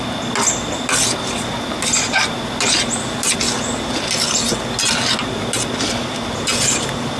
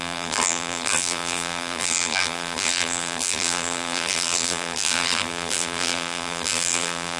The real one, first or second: first